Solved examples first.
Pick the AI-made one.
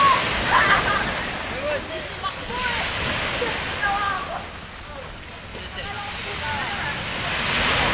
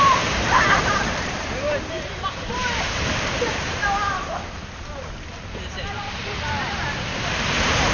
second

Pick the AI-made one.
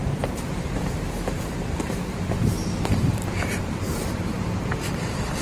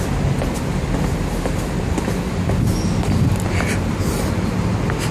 first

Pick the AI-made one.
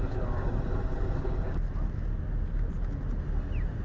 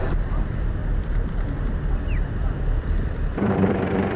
second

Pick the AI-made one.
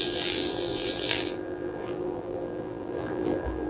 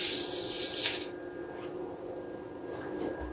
first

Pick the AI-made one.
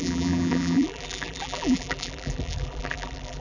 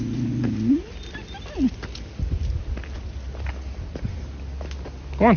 first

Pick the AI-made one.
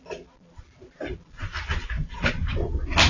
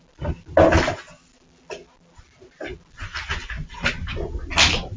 first